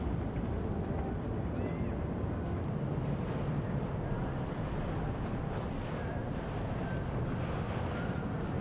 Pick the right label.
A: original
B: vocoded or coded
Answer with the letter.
A